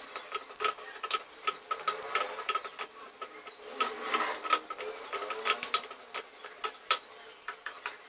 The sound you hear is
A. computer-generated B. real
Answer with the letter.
B